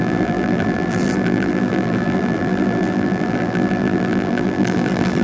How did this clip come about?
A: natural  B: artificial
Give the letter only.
B